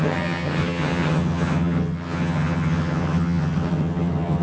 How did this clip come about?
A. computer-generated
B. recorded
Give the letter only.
A